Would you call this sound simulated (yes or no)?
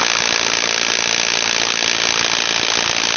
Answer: no